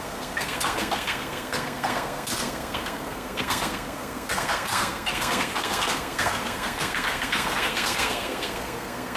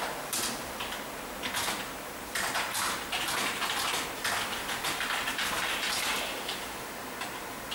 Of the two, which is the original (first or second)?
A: second